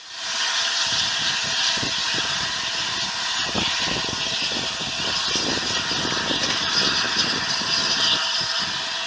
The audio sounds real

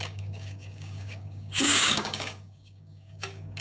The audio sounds fake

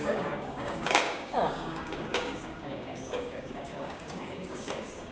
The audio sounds fake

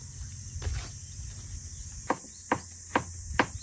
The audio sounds real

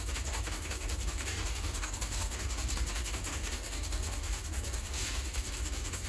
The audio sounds fake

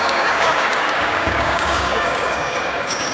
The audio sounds fake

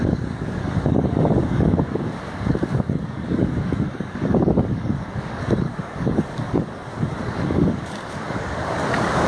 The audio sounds fake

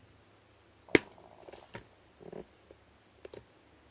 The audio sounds real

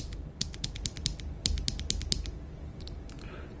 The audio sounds real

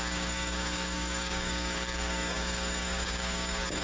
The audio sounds fake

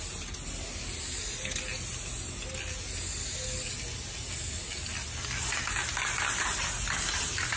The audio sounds real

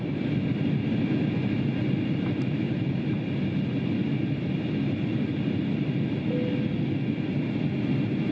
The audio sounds real